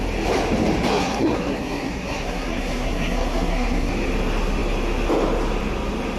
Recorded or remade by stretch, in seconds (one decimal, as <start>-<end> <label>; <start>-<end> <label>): 0.0-0.9 recorded; 0.9-3.9 remade; 3.9-6.2 recorded